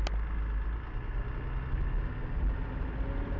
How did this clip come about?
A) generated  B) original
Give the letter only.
B